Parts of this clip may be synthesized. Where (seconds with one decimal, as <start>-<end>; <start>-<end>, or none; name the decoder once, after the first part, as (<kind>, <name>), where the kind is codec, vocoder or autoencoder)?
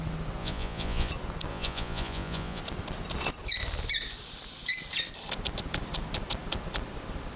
0.4-1.1 (vocoder, Vocos); 1.5-2.6